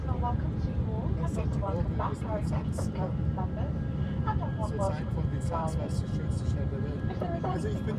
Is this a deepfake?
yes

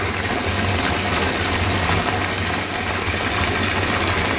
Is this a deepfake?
no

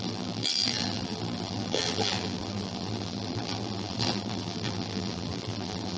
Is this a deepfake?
yes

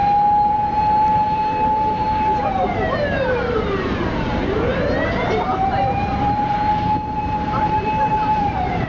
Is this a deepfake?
yes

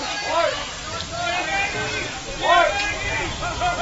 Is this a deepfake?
no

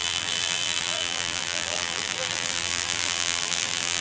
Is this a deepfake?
yes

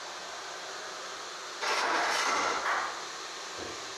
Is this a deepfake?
no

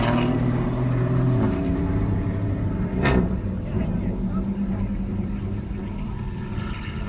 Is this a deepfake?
yes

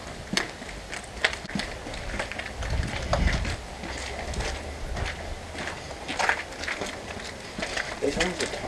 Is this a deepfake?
no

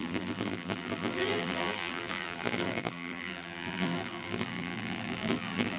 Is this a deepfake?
yes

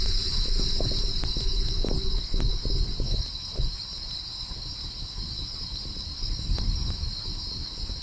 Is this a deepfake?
no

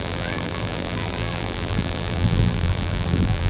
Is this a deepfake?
yes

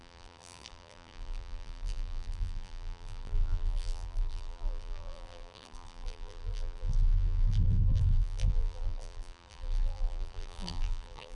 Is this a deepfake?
yes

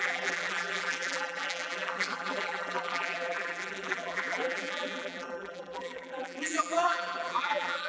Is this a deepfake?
yes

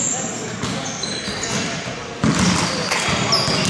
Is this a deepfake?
no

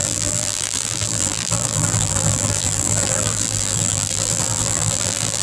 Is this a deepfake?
yes